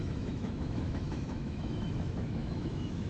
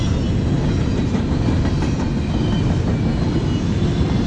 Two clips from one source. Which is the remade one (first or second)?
first